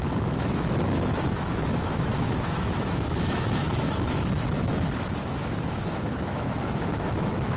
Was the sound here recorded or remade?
remade